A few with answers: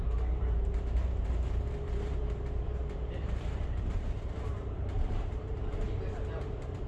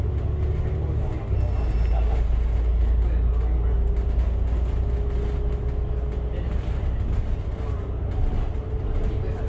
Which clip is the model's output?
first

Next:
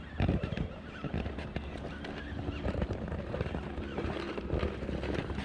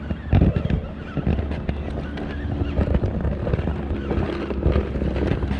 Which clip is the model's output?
first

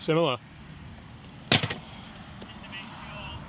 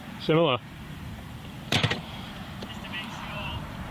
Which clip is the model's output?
second